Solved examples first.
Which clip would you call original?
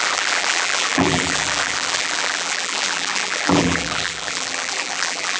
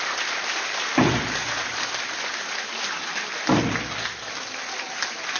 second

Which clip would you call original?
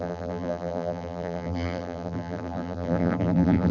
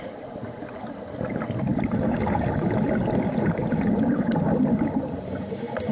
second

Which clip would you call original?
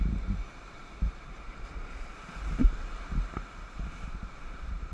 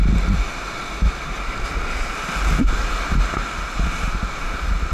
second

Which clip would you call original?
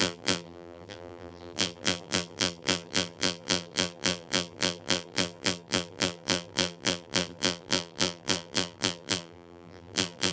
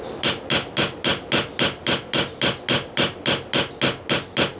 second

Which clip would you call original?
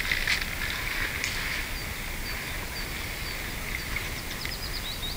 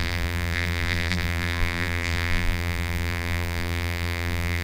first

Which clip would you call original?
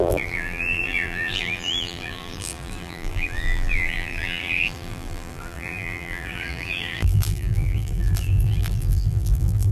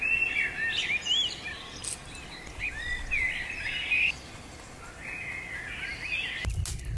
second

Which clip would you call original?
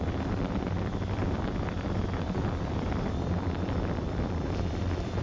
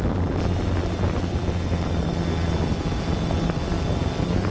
second